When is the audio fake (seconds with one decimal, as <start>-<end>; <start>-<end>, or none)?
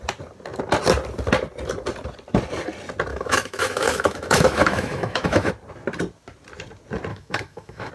3.1-5.5; 7.1-7.9